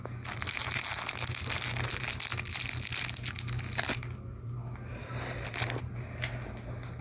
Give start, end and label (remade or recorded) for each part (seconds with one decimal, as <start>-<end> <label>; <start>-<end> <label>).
0.0-7.0 recorded